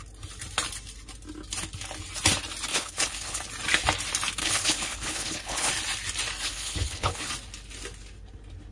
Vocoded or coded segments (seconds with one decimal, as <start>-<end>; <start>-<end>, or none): 2.7-3.4; 4.4-5.7; 6.4-7.3